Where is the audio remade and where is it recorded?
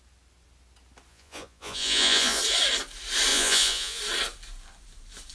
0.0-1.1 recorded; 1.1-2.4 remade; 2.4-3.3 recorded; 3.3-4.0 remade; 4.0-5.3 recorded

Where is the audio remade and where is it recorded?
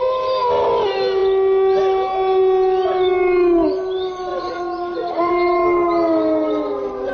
0.0-4.3 recorded; 4.3-5.3 remade; 5.3-7.1 recorded